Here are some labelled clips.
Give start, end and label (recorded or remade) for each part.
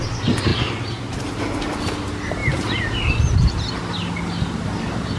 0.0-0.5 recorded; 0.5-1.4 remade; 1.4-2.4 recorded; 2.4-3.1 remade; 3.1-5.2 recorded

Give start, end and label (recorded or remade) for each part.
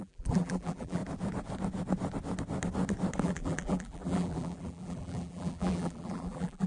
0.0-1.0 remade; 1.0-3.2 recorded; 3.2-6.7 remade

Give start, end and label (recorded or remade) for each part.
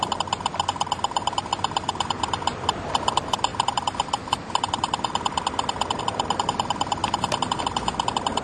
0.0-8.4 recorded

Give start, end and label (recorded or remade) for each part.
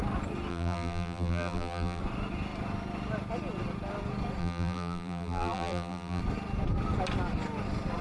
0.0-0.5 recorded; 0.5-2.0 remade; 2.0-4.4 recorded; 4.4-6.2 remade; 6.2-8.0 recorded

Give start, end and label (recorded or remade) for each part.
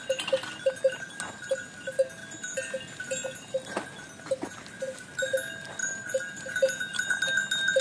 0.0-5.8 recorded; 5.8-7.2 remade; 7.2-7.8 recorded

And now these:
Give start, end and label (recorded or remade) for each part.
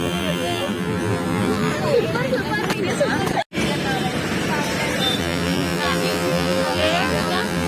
0.0-1.7 remade; 1.7-5.2 recorded; 5.2-7.7 remade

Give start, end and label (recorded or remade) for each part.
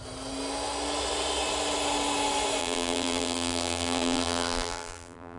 0.0-2.6 recorded; 2.6-5.4 remade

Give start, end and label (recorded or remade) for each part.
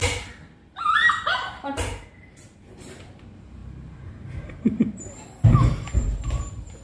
0.0-3.2 remade; 3.2-3.6 recorded; 3.6-5.0 remade; 5.0-5.9 recorded; 5.9-6.8 remade